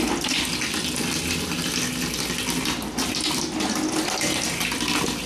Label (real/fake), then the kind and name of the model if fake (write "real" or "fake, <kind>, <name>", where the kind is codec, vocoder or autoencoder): real